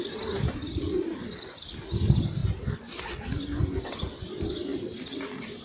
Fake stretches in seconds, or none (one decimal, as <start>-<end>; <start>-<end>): none